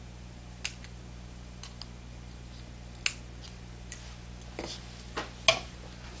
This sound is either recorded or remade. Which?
recorded